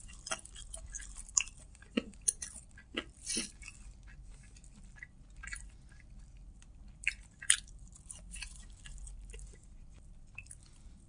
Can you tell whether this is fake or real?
fake